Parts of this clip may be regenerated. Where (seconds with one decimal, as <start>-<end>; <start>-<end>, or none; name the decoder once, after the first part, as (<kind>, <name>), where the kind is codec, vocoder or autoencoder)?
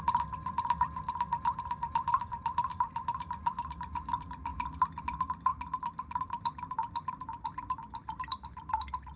0.0-4.5 (vocoder, BigVGAN v2); 5.0-5.5; 6.2-9.2